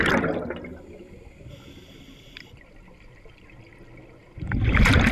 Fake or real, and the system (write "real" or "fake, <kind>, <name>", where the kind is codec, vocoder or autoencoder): real